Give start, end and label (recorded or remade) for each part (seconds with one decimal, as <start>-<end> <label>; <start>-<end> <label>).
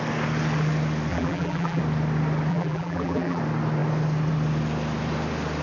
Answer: 0.0-1.1 recorded; 1.1-1.8 remade; 1.8-2.5 recorded; 2.5-3.4 remade; 3.4-5.6 recorded